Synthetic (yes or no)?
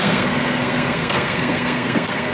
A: yes